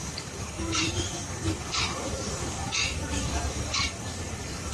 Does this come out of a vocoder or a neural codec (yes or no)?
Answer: yes